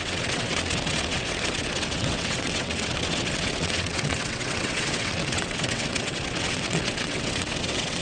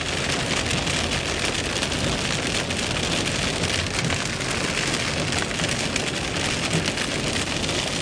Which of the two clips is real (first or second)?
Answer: second